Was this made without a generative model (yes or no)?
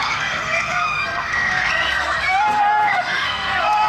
no